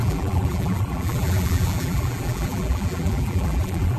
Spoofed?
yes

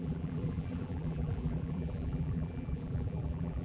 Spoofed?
yes